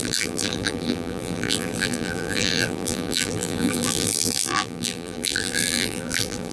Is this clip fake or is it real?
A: fake